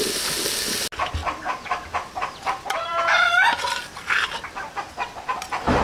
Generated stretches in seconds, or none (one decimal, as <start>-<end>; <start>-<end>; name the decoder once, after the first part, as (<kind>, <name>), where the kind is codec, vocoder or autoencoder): 1.2-4.7 (vocoder, BigVGAN v2)